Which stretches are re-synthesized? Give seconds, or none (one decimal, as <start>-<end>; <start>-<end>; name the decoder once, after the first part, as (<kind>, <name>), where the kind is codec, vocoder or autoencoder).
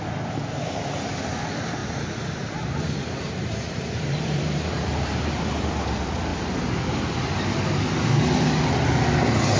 1.8-5.5 (vocoder, BigVGAN v2)